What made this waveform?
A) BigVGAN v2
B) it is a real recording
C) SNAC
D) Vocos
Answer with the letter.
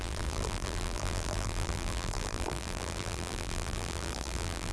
A